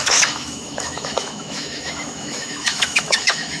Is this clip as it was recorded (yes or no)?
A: no